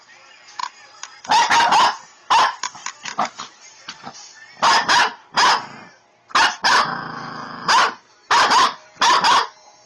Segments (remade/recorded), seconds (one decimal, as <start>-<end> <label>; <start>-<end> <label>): 0.0-9.9 recorded